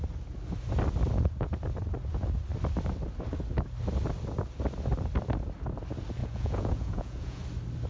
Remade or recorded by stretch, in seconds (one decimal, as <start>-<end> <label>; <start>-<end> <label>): 0.0-6.2 recorded; 6.2-7.4 remade; 7.4-7.9 recorded

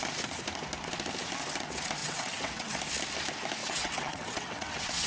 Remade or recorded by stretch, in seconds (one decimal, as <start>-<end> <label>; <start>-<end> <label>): 0.0-2.0 recorded; 2.0-2.8 remade; 2.8-3.6 recorded; 3.6-5.1 remade

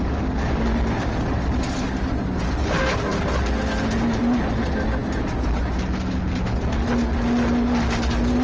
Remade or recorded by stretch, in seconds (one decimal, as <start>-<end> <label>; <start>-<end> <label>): 0.0-8.4 recorded

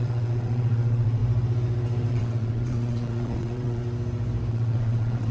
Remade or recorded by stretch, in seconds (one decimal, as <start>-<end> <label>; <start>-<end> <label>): 0.0-1.2 remade; 1.2-2.1 recorded; 2.1-3.8 remade; 3.8-4.5 recorded; 4.5-5.3 remade

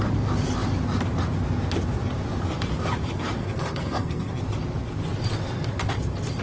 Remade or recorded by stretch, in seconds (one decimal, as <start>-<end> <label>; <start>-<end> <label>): 0.0-3.4 recorded; 3.4-4.4 remade; 4.4-6.4 recorded

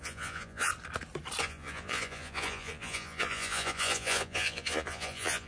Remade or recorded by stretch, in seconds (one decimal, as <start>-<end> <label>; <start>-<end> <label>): 0.0-0.7 remade; 0.7-1.4 recorded; 1.4-5.5 remade